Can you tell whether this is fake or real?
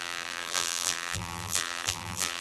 fake